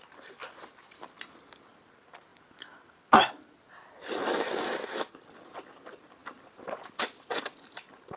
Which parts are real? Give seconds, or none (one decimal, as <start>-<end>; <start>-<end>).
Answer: 0.0-6.2; 7.0-8.2